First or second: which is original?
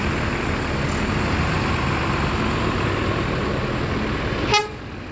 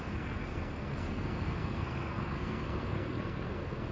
first